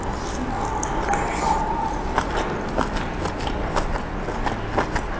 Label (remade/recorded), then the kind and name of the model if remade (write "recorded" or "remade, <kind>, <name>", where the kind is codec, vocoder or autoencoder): recorded